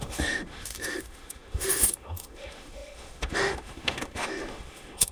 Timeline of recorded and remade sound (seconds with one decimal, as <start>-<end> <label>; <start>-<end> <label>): 0.0-5.1 remade